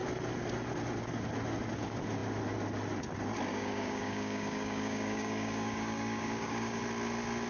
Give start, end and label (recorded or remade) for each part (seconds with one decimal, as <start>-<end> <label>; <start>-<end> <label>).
0.0-3.5 recorded; 3.5-6.8 remade; 6.8-7.5 recorded